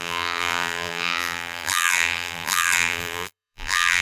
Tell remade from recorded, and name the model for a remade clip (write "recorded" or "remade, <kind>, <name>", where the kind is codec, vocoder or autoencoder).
remade, vocoder, BigVGAN v2